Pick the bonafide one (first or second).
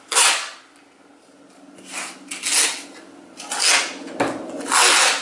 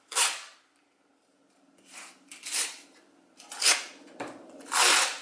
first